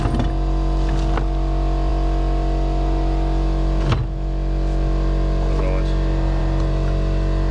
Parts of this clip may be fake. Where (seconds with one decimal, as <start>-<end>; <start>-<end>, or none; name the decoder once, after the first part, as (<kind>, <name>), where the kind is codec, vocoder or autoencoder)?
none